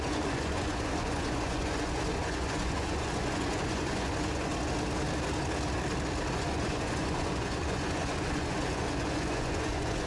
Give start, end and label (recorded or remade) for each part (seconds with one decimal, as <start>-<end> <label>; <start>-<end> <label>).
0.0-4.5 remade; 4.5-6.3 recorded; 6.3-10.1 remade